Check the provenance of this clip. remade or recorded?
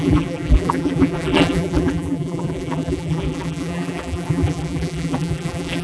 remade